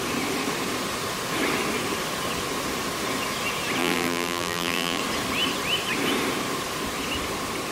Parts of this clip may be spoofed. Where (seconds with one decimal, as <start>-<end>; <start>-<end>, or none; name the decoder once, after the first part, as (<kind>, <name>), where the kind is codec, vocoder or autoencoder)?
3.8-5.0 (vocoder, BigVGAN v2)